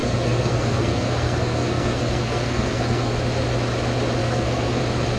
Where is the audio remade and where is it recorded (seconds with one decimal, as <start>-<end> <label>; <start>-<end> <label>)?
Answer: 0.0-3.1 remade; 3.1-4.2 recorded; 4.2-4.8 remade; 4.8-5.2 recorded